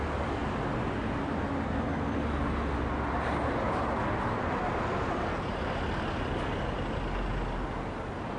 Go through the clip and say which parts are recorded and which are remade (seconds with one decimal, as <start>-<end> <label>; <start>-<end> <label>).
0.0-8.4 recorded